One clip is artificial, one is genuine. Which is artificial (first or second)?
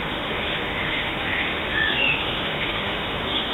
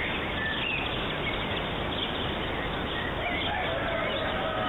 first